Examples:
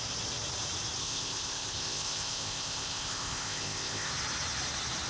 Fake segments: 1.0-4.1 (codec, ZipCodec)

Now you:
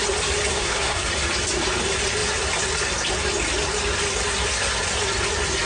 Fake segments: 0.5-1.1 (codec, SNAC)